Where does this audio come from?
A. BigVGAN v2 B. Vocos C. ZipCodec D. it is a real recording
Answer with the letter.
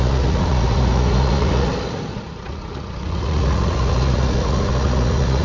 B